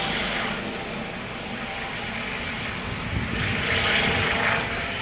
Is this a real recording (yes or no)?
yes